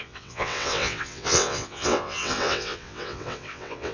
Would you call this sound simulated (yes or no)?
yes